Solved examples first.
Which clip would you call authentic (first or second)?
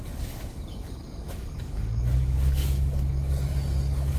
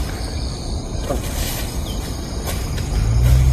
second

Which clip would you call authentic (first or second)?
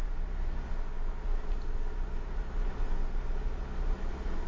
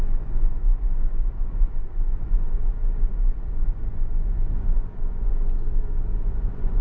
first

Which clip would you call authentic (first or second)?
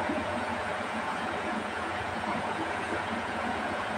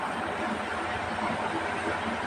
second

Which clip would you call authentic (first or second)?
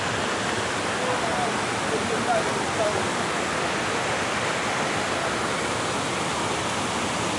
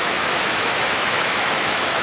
first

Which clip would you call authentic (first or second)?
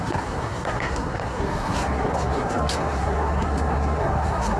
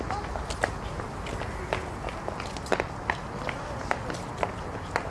second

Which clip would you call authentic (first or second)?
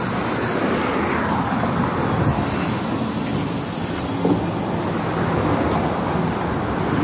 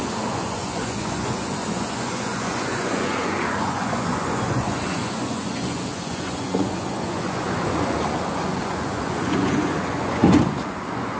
first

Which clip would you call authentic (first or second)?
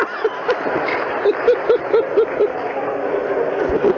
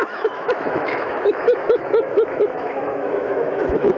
first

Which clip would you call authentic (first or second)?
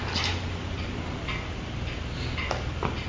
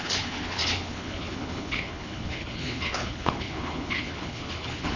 first